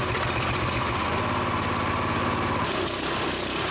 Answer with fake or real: real